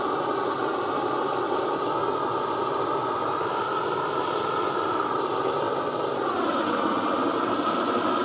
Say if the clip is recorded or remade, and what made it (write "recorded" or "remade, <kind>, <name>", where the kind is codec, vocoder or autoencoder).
recorded